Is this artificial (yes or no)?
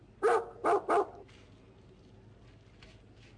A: no